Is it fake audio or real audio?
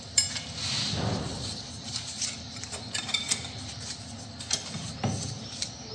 real